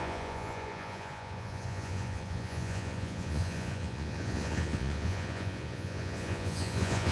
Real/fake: fake